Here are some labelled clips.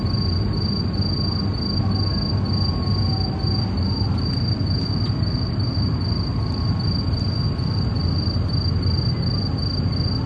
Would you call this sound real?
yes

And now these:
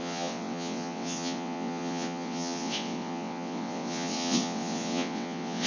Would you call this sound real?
no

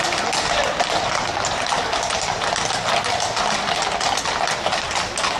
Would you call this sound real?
yes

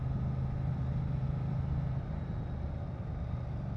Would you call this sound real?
yes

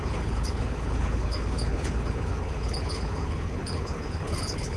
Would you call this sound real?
no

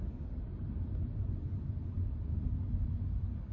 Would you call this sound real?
yes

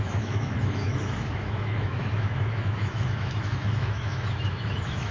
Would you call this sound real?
no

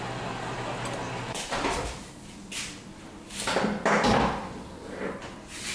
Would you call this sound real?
yes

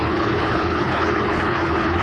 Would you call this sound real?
no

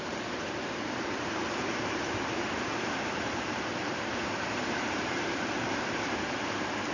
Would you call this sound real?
no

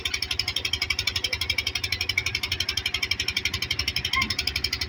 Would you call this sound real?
yes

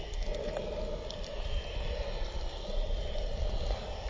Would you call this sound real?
yes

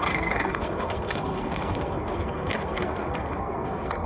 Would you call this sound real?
no